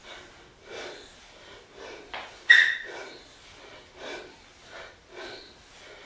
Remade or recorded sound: recorded